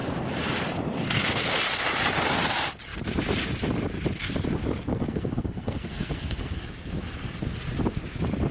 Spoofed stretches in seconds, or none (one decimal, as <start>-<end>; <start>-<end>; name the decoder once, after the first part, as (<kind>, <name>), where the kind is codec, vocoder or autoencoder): 4.9-6.6 (codec, SNAC)